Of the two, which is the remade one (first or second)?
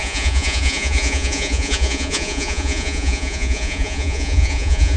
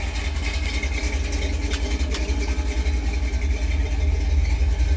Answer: first